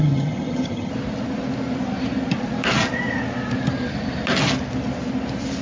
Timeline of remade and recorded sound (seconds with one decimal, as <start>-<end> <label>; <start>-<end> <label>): 0.0-0.9 remade; 0.9-5.6 recorded